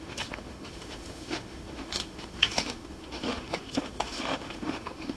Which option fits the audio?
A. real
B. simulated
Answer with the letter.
B